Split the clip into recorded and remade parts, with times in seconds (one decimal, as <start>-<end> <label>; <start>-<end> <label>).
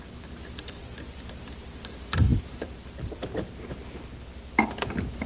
0.0-5.3 recorded